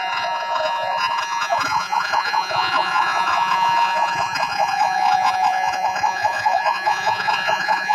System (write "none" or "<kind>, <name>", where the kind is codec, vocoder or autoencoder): vocoder, Vocos